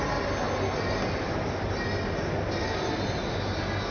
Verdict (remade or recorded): recorded